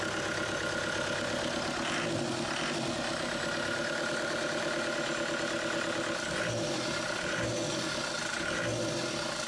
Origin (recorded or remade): recorded